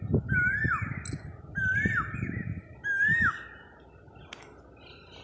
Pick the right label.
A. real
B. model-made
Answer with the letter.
A